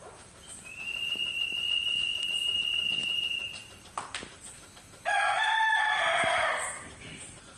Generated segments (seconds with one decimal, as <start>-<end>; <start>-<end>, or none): none